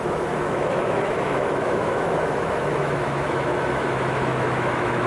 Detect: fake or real fake